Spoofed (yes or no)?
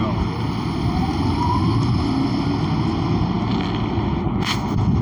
no